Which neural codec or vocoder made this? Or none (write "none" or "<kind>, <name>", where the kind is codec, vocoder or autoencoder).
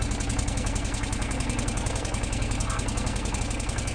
codec, SNAC